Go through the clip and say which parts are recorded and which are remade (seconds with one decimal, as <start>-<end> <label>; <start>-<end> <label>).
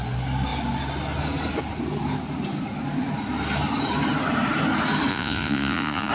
0.0-5.1 recorded; 5.1-6.1 remade